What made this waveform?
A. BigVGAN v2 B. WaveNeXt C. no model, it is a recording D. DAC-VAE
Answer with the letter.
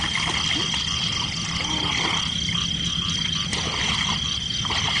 C